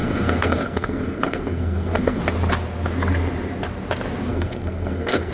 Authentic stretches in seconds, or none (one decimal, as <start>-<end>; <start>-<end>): 2.2-4.3

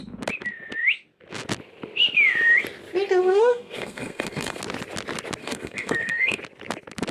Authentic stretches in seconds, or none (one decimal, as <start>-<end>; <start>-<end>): 0.0-3.2; 4.6-5.4; 6.4-7.1

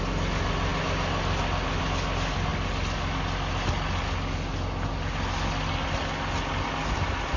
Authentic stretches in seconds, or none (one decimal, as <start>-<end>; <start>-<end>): 0.0-7.4

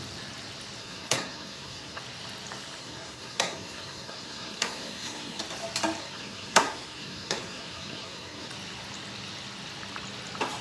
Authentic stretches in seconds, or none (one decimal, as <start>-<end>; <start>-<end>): 0.0-0.8; 2.0-2.8; 5.4-6.0; 8.5-10.6

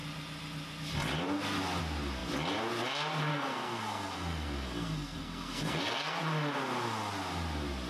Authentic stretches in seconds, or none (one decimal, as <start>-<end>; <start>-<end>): 0.0-3.3; 6.2-7.9

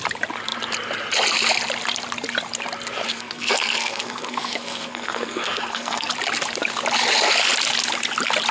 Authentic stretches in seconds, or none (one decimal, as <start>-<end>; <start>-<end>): 0.0-3.1; 6.1-8.5

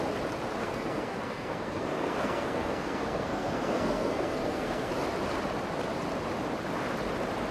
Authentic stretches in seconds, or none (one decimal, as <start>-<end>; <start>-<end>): 0.0-0.6; 4.9-7.5